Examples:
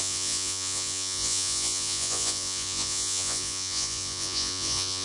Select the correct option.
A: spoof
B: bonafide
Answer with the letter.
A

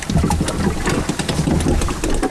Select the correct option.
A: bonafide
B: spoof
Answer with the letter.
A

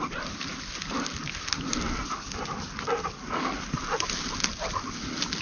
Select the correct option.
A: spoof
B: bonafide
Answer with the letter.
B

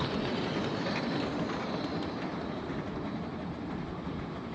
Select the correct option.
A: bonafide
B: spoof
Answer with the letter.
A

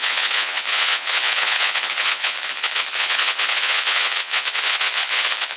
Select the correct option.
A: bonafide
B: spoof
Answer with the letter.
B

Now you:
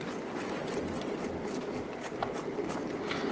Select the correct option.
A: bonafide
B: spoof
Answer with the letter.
A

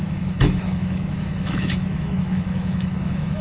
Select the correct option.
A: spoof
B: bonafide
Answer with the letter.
A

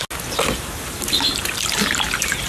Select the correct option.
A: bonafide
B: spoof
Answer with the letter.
A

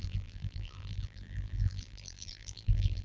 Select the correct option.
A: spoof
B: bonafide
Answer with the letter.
A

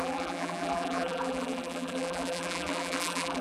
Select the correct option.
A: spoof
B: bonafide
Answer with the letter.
A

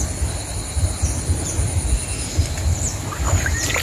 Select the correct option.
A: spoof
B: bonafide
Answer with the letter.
B